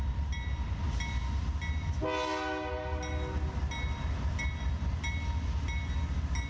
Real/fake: real